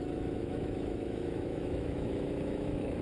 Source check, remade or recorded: remade